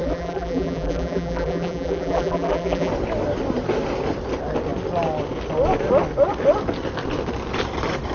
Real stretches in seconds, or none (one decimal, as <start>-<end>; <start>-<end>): 2.9-8.1